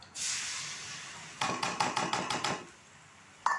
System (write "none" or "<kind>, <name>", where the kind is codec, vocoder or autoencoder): none